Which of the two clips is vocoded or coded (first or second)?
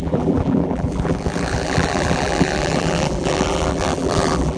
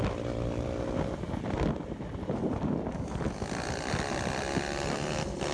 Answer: first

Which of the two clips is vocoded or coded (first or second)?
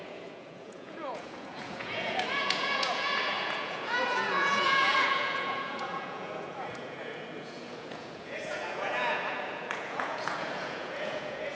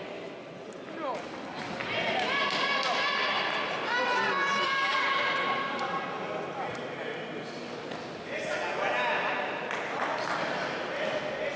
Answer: first